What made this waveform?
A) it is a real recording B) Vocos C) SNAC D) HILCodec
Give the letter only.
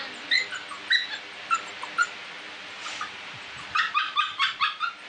A